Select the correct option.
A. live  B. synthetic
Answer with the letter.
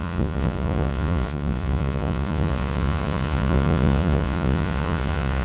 B